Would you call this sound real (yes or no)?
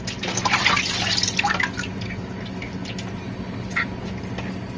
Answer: yes